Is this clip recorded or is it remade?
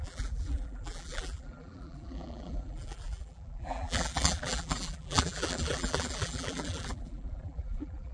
remade